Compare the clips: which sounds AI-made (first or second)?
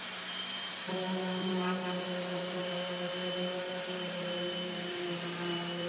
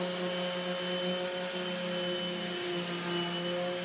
first